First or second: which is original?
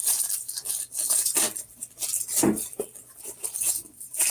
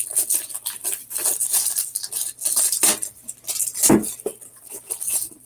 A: second